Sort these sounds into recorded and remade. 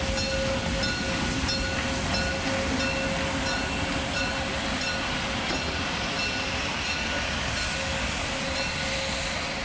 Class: recorded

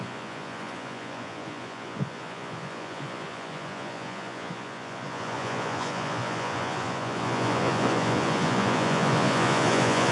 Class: remade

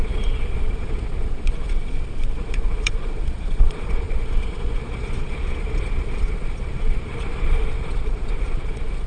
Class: remade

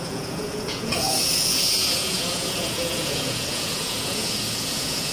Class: remade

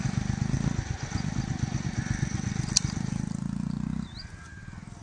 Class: recorded